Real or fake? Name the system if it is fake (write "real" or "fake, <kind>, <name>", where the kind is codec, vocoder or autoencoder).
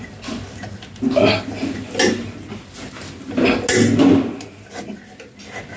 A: real